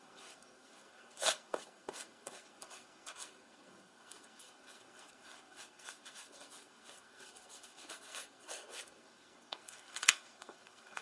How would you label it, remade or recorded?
remade